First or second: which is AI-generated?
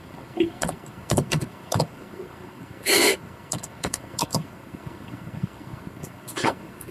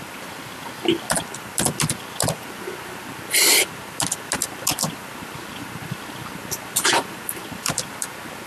first